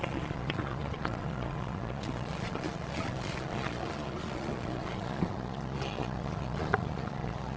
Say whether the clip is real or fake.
fake